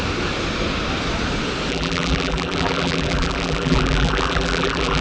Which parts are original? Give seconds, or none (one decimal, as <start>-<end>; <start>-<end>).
0.0-1.7